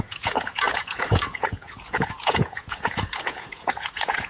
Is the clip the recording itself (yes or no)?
no